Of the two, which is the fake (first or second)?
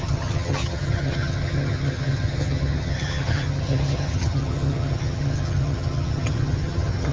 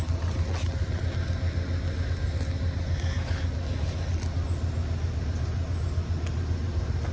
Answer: first